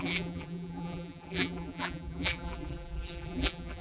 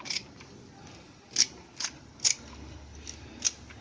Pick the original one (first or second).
second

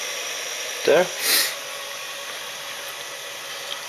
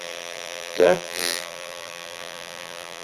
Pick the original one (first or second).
first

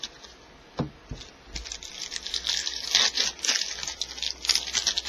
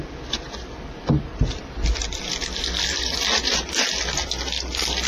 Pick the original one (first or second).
first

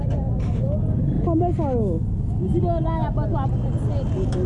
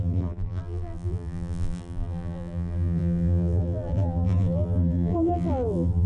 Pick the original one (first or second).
first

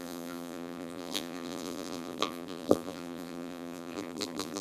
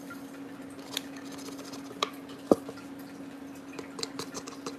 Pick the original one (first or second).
second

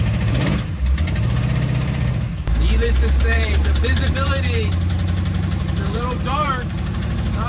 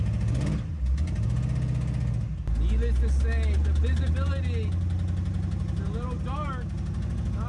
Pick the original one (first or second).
second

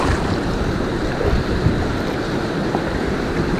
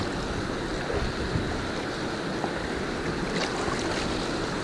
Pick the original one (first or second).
second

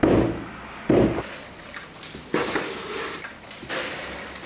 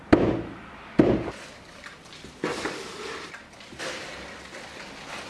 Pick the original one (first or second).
first